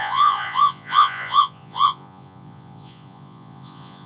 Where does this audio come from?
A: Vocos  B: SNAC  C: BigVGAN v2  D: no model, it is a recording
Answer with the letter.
A